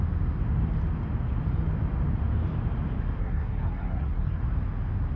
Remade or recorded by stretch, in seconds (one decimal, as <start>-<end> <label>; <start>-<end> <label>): 0.0-3.2 recorded; 3.2-4.4 remade; 4.4-5.2 recorded